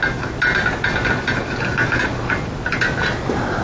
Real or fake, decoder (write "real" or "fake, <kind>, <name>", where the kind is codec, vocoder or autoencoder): real